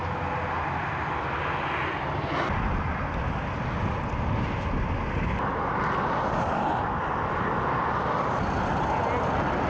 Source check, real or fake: real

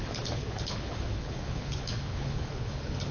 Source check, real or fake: fake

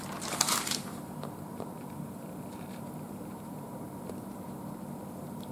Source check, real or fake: fake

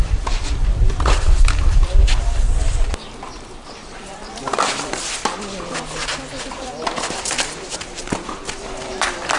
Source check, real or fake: fake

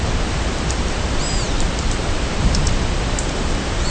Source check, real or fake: fake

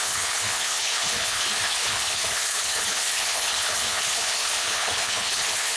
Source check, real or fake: fake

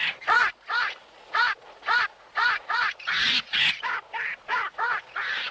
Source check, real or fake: fake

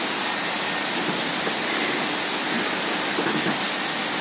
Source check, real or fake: real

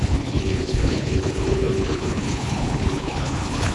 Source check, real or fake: fake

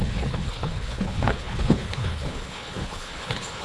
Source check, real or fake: fake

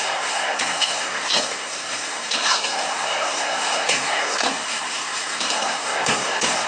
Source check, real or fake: fake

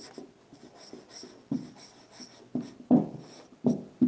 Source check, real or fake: real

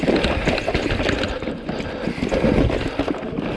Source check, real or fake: real